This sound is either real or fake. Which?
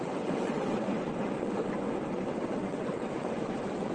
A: fake